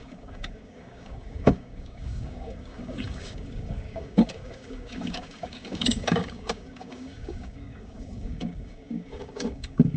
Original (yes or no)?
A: no